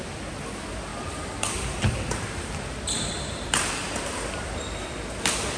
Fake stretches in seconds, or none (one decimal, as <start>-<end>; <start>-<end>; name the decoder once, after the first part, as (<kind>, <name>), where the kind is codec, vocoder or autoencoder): 0.9-4.3 (vocoder, BigVGAN v2)